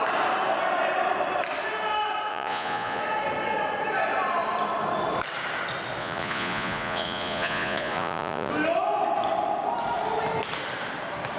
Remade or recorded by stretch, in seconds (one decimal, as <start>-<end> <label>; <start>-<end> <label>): 0.0-2.3 recorded; 2.3-3.0 remade; 3.0-6.0 recorded; 6.0-8.5 remade; 8.5-11.4 recorded